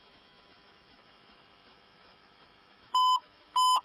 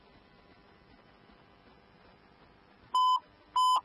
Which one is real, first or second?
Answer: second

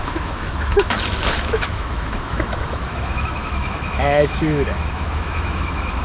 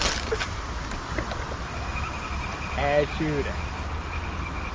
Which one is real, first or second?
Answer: second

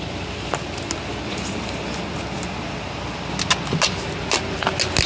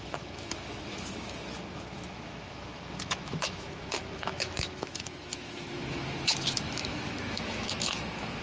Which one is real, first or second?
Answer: first